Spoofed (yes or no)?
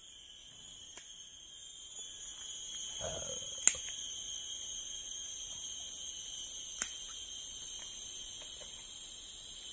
no